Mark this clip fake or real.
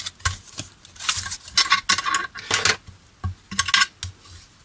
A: real